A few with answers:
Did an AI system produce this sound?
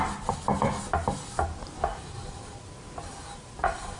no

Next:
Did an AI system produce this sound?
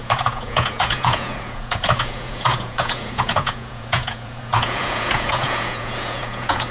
yes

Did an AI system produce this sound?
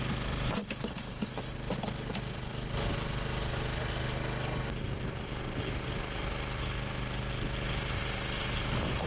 no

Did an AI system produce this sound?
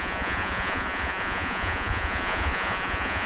yes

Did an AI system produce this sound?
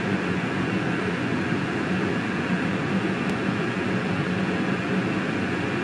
yes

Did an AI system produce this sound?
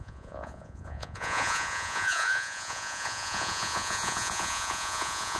yes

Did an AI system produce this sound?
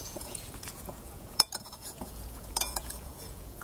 yes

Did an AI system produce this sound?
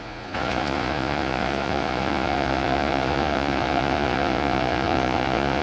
yes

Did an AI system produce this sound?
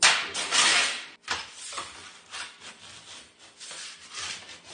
no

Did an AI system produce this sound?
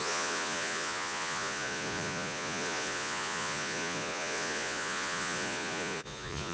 yes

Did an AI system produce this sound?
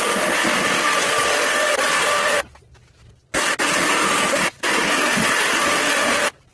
no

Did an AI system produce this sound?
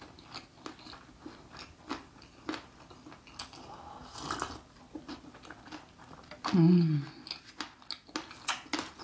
no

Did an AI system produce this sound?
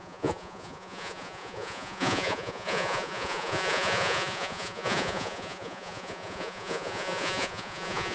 yes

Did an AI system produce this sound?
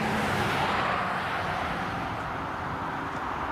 no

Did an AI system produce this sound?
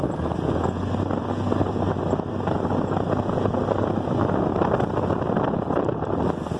no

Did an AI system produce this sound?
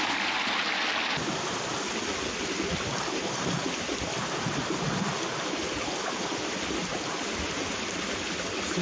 no